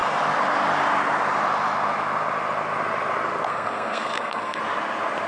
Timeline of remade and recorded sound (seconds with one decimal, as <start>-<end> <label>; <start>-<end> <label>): 0.0-3.5 recorded; 3.5-4.6 remade; 4.6-5.3 recorded